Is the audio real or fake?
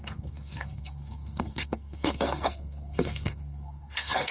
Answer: fake